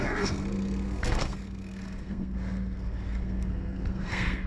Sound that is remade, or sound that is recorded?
remade